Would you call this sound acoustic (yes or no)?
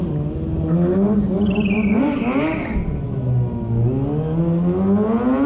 yes